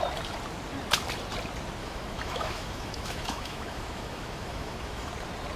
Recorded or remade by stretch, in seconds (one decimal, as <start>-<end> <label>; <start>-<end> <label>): 0.0-1.8 recorded; 1.8-5.1 remade; 5.1-5.6 recorded